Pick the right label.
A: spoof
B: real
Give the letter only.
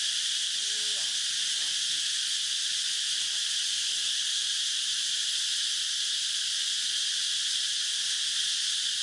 B